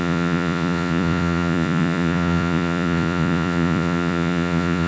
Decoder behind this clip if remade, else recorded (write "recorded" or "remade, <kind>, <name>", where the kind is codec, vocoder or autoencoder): remade, vocoder, Vocos